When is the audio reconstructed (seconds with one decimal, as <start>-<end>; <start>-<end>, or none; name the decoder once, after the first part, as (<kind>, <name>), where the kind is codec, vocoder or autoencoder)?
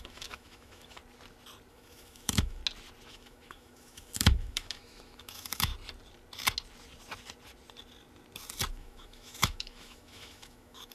0.0-1.0 (autoencoder, DAC-VAE); 1.7-2.6; 3.1-5.7; 8.7-10.9